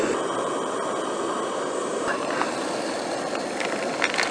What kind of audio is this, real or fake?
fake